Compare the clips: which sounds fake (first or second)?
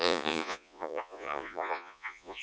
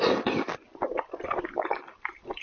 first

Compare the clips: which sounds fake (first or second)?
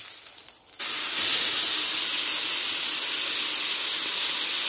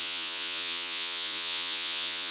second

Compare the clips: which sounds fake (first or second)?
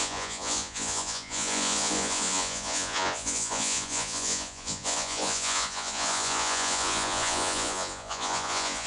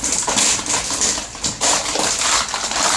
first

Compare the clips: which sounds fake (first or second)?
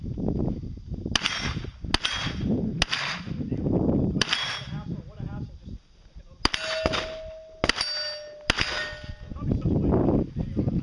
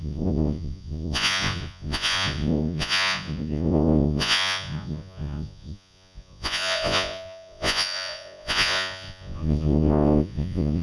second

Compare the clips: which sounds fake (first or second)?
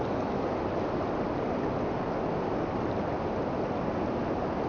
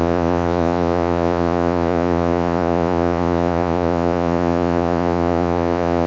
second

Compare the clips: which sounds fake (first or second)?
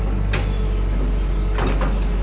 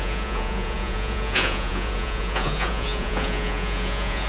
second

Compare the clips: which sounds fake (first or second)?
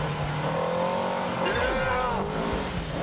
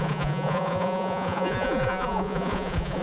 second